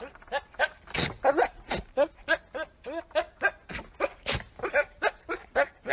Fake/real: real